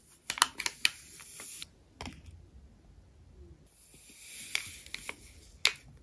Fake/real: real